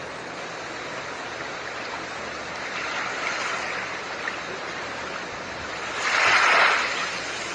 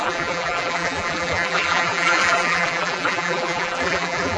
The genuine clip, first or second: first